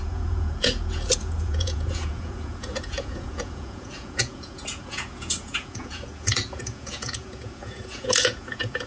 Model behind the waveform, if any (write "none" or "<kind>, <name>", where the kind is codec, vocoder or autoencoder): vocoder, Vocos